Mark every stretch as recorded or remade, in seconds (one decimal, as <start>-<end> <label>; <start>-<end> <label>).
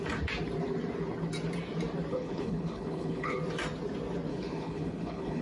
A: 0.0-2.1 recorded; 2.1-3.4 remade; 3.4-4.3 recorded; 4.3-5.4 remade